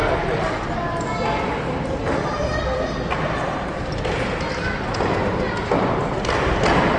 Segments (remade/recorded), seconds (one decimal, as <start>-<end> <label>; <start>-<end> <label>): 0.0-7.0 recorded